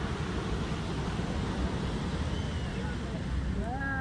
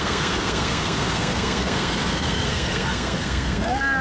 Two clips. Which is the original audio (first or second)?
first